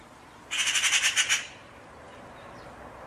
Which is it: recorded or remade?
remade